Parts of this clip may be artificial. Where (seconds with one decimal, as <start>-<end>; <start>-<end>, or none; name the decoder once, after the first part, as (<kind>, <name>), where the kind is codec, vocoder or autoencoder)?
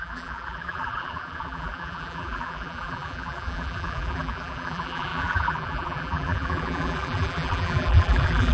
0.0-8.5 (vocoder, BigVGAN v2)